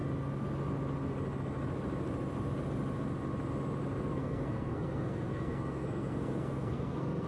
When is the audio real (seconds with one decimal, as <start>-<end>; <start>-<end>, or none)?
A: 0.0-4.1